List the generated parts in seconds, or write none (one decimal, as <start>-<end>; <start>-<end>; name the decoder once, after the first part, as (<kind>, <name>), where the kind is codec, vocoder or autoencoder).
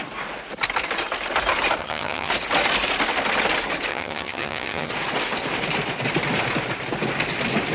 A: 1.8-2.3 (vocoder, HiFi-GAN); 3.9-4.9